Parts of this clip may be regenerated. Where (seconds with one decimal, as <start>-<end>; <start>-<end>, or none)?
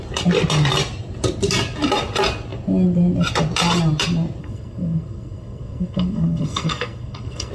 4.4-7.5